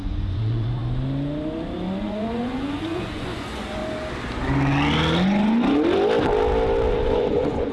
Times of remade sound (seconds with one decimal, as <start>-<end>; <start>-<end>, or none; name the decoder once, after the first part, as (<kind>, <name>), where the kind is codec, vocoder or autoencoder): 0.0-0.8 (vocoder, Vocos); 2.0-3.8; 6.9-7.7